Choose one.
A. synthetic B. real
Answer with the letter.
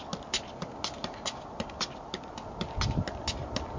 B